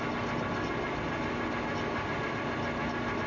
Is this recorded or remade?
recorded